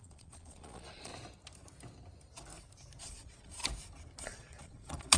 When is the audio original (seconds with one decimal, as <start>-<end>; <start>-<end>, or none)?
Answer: 1.1-3.0; 3.6-4.2